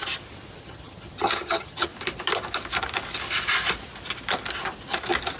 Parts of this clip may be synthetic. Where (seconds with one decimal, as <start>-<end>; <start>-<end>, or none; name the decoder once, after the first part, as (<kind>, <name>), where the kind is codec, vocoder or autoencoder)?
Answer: 0.6-1.9 (vocoder, HiFi-GAN)

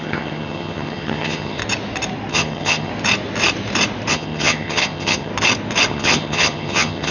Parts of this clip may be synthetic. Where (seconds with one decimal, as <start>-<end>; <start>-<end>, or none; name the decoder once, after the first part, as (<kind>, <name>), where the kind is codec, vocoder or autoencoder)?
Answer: 0.0-1.6 (vocoder, HiFi-GAN); 2.3-2.9; 4.1-5.3; 5.9-7.1

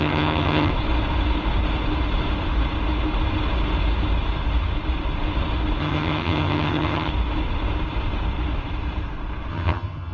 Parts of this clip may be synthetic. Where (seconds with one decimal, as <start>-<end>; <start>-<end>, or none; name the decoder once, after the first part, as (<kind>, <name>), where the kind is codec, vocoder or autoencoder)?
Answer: 0.0-0.7 (vocoder, HiFi-GAN); 5.8-7.1; 9.5-10.1